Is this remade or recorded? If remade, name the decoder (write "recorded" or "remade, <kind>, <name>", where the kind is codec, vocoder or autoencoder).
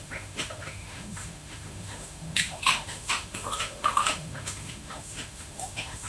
remade, autoencoder, DAC-VAE